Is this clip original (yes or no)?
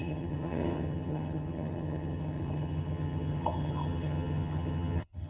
no